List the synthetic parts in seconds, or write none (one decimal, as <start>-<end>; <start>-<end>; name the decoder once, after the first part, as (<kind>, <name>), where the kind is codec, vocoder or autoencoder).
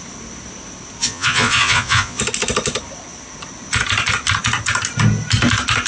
1.0-2.2 (vocoder, Vocos)